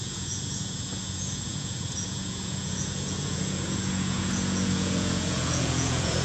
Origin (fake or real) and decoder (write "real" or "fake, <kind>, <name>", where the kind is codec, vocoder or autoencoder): fake, vocoder, Vocos